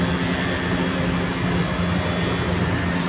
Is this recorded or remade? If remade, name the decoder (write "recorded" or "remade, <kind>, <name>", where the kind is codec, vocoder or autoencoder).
recorded